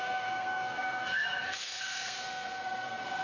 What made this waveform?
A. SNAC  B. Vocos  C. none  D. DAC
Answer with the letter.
A